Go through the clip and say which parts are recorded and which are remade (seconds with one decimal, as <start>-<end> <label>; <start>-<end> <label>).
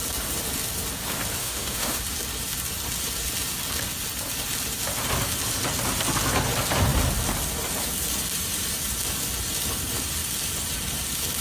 0.0-1.4 recorded; 1.4-2.0 remade; 2.0-11.4 recorded